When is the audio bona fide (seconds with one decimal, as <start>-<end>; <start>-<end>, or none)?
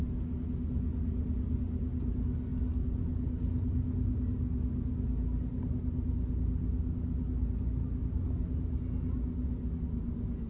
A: 0.0-10.5